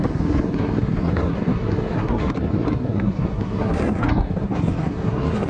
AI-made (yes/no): yes